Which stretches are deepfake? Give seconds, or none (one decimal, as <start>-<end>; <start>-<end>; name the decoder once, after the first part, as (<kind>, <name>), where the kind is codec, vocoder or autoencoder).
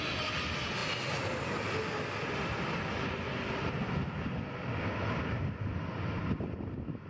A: none